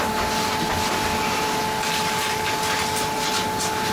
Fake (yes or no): no